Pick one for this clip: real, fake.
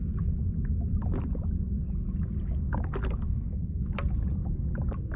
real